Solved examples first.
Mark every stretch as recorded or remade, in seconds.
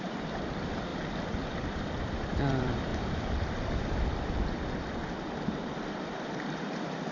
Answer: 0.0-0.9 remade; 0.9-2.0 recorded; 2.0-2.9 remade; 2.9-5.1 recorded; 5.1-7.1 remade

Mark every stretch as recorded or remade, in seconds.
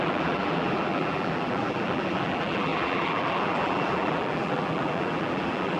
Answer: 0.0-5.8 remade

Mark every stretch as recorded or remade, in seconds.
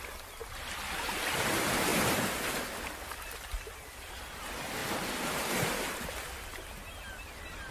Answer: 0.0-7.7 recorded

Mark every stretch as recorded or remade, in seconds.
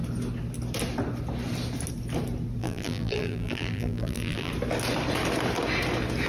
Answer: 0.0-2.6 recorded; 2.6-4.5 remade; 4.5-6.3 recorded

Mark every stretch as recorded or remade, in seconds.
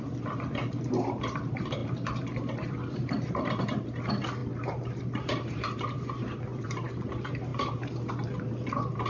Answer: 0.0-4.4 remade; 4.4-5.0 recorded; 5.0-9.1 remade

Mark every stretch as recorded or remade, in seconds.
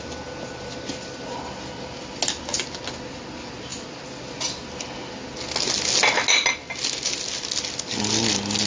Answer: 0.0-8.7 recorded